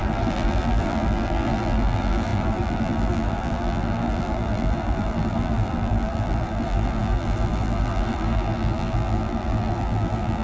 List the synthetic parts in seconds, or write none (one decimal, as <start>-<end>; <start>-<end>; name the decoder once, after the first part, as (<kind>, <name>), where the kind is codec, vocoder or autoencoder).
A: 0.0-10.4 (vocoder, BigVGAN v2)